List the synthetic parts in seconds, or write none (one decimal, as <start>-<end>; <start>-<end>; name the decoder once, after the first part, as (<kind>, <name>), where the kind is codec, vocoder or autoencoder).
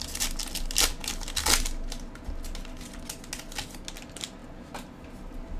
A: none